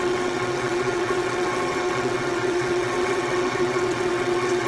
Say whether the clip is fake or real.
fake